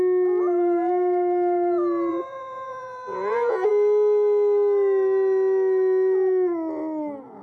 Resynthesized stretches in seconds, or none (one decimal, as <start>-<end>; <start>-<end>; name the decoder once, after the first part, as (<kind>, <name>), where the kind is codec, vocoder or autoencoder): 2.1-3.7 (vocoder, Vocos)